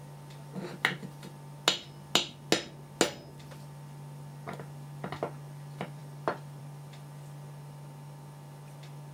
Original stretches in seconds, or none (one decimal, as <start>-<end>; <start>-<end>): 0.0-9.1